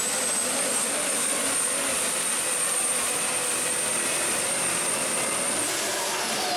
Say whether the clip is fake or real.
real